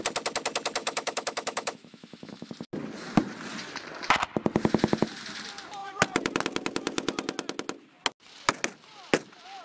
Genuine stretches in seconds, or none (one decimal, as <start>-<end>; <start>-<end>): 0.0-0.8; 2.5-9.6